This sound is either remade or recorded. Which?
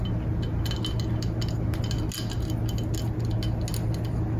recorded